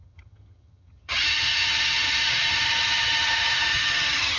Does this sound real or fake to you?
fake